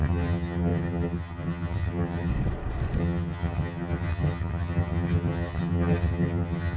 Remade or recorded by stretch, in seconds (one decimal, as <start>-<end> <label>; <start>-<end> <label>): 0.0-2.3 remade; 2.3-3.0 recorded; 3.0-6.8 remade